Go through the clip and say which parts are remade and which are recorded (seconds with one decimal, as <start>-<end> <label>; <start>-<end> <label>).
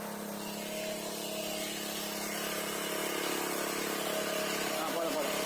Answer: 0.0-5.5 recorded